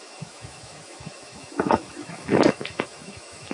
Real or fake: fake